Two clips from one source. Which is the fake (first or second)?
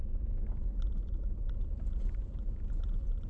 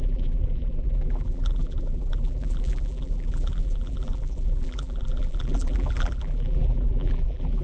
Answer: second